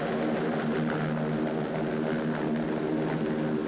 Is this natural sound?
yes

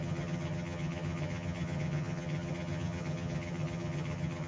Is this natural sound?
no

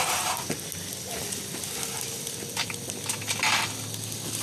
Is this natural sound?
yes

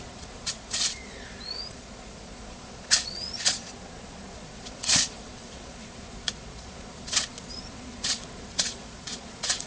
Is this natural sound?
no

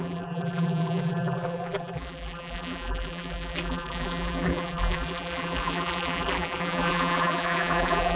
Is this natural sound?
no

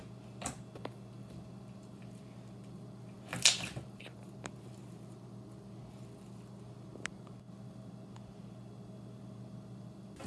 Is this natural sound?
yes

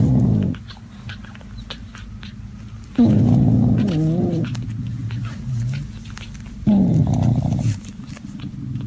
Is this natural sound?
yes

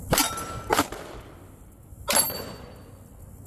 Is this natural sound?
yes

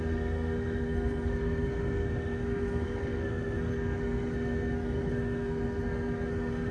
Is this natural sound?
no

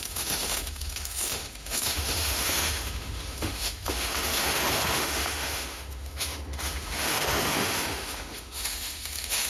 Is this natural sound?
no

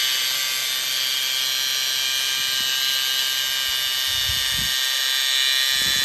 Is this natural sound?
yes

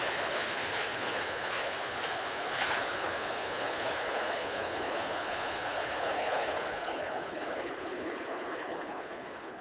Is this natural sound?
no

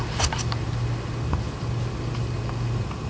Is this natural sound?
yes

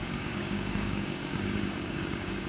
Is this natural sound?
no